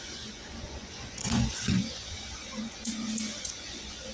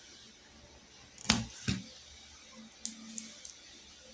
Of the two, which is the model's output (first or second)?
first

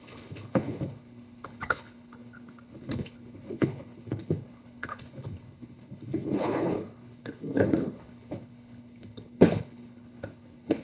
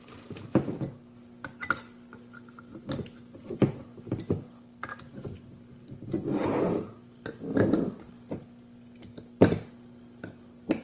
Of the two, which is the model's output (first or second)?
first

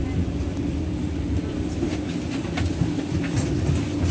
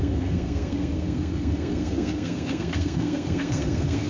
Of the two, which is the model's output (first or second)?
second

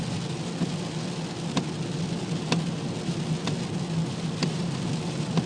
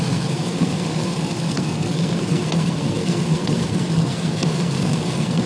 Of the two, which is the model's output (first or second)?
second